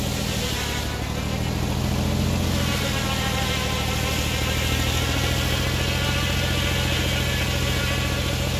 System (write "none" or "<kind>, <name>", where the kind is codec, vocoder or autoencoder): none